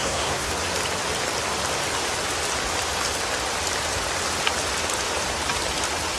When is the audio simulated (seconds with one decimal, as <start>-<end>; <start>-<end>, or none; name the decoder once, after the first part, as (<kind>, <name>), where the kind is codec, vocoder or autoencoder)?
0.0-0.5 (codec, SNAC)